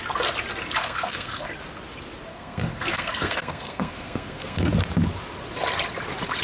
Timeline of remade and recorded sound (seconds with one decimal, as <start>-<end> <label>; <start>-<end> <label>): 0.0-0.8 recorded; 0.8-1.5 remade; 1.5-2.3 recorded; 2.3-4.7 remade; 4.7-6.4 recorded